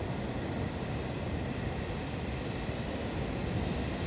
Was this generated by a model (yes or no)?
yes